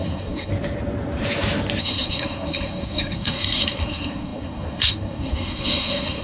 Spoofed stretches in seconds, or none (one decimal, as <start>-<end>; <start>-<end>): 0.0-0.5; 1.8-6.2